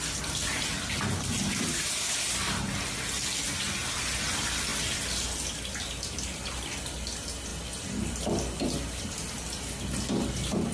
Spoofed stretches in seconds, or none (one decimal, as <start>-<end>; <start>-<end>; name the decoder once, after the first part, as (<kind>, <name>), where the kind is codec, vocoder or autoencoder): none